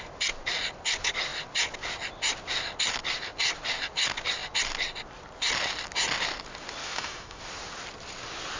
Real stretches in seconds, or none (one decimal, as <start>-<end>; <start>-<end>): 0.0-6.8; 7.4-8.6